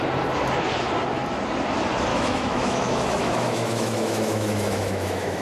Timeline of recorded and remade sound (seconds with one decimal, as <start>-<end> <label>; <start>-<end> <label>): 0.0-2.1 recorded; 2.1-5.4 remade